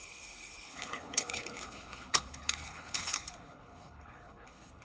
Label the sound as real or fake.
fake